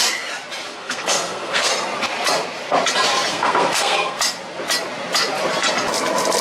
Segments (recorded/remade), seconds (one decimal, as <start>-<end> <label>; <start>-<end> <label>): 0.0-0.7 recorded; 0.7-1.7 remade; 1.7-3.3 recorded; 3.3-4.2 remade; 4.2-6.4 recorded